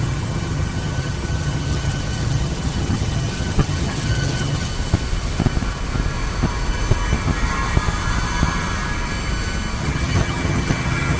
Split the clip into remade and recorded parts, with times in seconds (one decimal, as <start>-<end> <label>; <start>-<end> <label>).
0.0-4.7 remade; 4.7-9.8 recorded; 9.8-11.2 remade